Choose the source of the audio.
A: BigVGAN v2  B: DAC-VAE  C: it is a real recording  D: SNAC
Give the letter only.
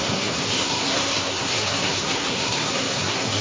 D